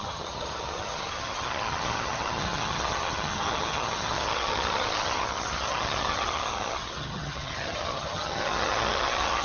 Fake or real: fake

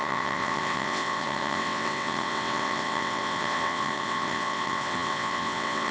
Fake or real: fake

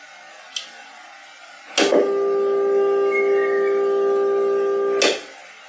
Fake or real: real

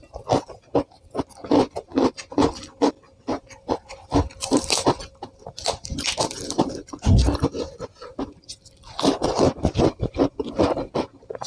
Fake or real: real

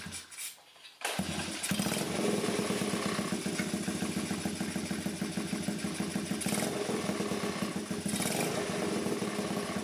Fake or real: real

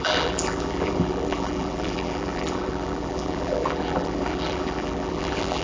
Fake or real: fake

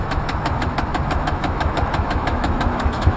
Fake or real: fake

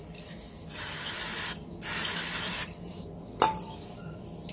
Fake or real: real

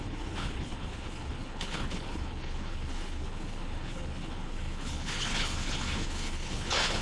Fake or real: fake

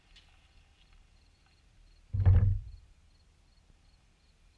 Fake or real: real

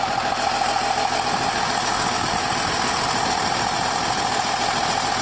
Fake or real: real